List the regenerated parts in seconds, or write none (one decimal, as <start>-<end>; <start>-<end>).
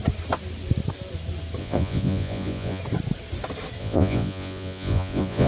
1.6-2.8; 3.8-5.5